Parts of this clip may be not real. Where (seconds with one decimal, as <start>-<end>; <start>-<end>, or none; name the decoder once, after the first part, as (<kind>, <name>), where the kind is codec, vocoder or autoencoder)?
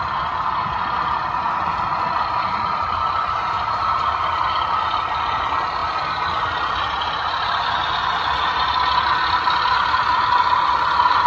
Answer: none